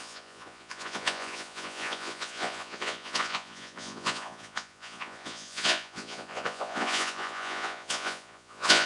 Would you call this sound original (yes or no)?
no